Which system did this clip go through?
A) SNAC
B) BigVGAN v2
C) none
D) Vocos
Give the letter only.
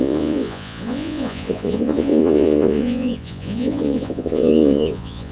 D